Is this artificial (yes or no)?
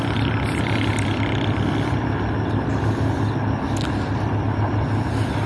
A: no